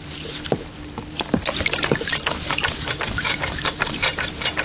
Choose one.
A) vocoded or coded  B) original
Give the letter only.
A